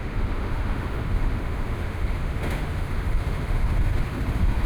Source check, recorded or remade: remade